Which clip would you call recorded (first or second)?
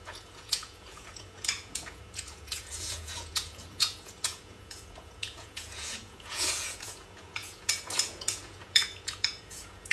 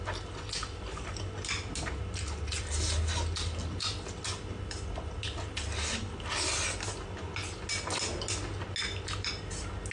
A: second